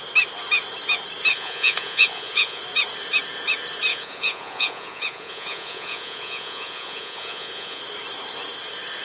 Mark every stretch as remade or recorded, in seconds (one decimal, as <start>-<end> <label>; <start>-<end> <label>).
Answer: 0.0-1.3 recorded; 1.3-2.6 remade; 2.6-3.9 recorded; 3.9-7.8 remade; 7.8-9.0 recorded